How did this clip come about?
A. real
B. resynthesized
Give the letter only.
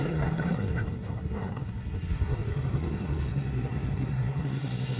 B